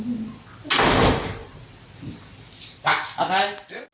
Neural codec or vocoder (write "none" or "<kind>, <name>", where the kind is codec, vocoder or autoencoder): none